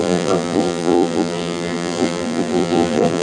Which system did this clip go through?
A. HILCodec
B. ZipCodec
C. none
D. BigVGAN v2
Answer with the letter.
D